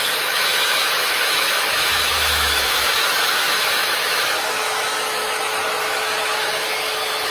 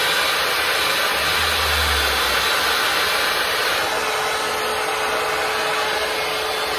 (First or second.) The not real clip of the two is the first